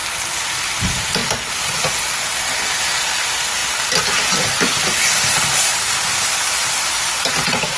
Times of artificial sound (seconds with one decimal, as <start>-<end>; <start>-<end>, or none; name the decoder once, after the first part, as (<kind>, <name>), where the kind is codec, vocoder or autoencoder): 3.6-7.1 (vocoder, BigVGAN v2)